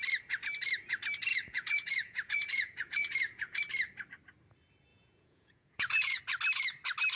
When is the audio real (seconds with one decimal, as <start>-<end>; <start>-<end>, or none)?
0.0-1.3; 3.6-4.9; 6.2-7.2